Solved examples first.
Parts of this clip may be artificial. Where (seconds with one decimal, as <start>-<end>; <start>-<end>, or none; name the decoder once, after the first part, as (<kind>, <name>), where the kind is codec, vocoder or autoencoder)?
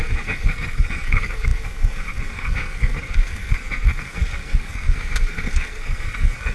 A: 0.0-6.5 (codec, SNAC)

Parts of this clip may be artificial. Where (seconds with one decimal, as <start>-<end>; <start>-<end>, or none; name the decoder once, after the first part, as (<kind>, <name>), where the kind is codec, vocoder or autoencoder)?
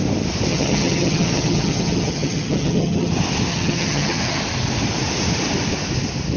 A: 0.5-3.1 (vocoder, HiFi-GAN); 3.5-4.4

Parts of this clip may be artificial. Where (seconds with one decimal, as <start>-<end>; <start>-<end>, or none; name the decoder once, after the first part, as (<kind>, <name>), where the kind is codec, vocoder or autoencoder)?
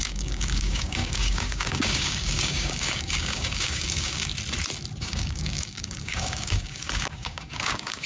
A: 0.0-4.3 (codec, DAC); 5.0-8.1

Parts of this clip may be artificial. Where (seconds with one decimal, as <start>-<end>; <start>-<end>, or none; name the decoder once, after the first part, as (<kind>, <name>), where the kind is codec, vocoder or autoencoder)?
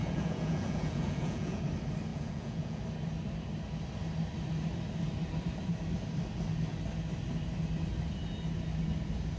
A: 0.0-1.6 (vocoder, Vocos); 2.1-2.8